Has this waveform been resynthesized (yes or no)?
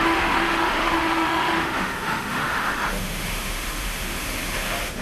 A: yes